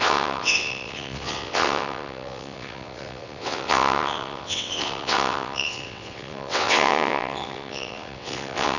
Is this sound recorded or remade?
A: remade